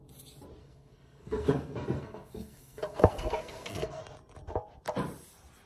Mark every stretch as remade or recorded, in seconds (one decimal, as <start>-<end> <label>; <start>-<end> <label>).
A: 0.0-0.6 recorded; 0.6-4.0 remade; 4.0-5.7 recorded